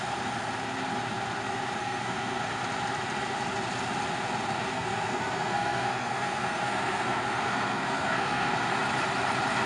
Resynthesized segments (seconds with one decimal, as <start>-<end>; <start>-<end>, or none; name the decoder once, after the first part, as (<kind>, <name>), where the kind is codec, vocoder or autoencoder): 1.8-2.5 (codec, SNAC); 4.6-8.5